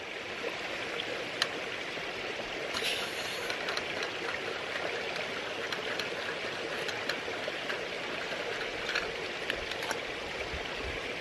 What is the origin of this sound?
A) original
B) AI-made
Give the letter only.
A